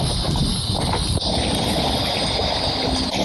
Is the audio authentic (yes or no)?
yes